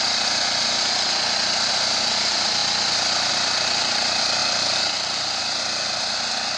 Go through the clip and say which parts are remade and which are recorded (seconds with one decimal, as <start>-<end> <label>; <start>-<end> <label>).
0.0-4.4 recorded; 4.4-5.4 remade; 5.4-6.6 recorded